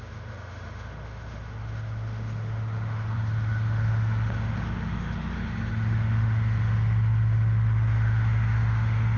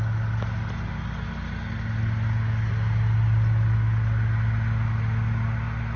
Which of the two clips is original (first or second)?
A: second